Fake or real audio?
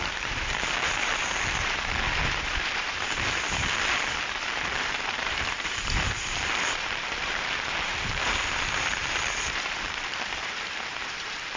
fake